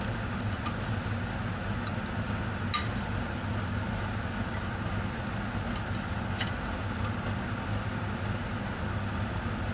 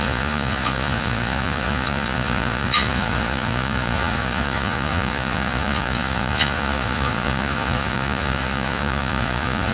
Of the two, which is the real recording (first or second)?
first